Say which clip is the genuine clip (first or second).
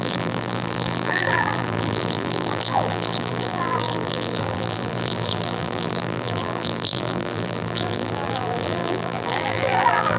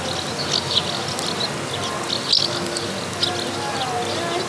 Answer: second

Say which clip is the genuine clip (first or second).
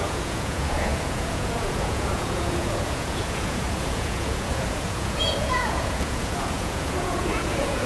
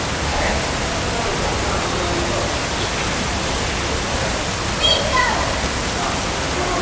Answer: second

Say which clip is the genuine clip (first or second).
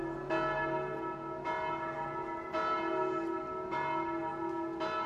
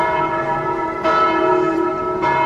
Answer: first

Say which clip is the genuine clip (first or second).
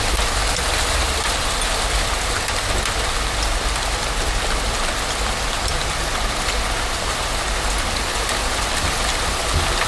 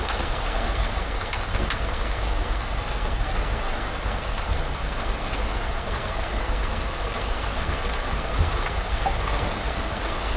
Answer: first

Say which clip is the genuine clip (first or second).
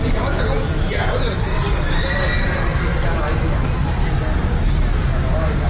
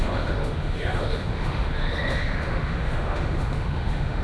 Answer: first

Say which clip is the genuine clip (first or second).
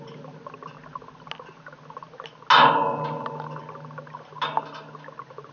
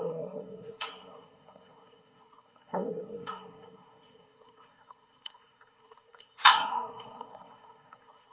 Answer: first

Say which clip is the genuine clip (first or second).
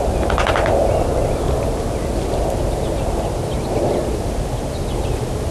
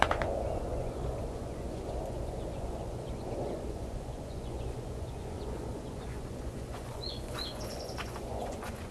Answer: first